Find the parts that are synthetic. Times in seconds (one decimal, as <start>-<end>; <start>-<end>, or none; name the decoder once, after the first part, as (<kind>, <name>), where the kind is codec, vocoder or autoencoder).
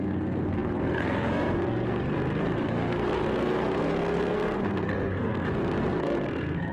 0.0-6.7 (codec, SNAC)